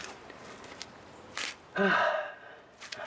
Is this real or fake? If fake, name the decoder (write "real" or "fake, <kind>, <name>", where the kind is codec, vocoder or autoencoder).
real